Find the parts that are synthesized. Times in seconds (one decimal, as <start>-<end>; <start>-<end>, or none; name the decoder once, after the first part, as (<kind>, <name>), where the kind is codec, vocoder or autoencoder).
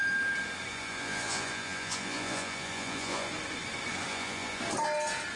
0.7-3.3 (vocoder, Vocos); 4.1-4.6